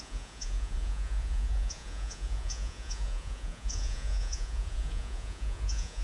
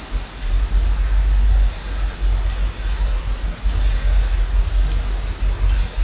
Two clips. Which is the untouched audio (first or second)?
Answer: second